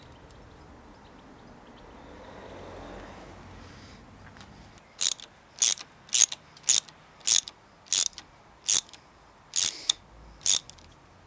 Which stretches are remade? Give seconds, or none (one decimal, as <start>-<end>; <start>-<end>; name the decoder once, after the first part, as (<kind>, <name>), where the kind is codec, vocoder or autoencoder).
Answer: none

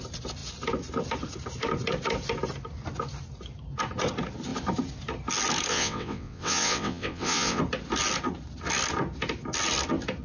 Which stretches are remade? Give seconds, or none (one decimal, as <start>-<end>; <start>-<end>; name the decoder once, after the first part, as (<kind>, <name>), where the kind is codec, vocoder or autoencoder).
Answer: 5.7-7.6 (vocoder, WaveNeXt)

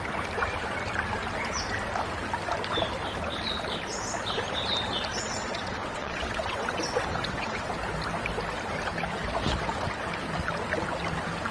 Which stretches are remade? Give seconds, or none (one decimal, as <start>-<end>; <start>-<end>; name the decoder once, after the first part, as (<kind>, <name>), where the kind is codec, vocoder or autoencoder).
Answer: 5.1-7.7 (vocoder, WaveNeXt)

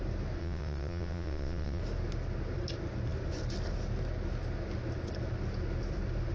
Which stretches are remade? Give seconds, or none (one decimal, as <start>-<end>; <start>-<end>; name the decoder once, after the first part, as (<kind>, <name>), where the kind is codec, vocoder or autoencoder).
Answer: 0.4-1.8 (vocoder, WaveNeXt)